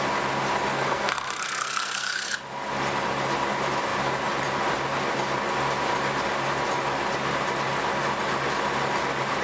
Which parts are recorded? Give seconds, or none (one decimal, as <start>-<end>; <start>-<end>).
0.0-0.7; 2.4-9.4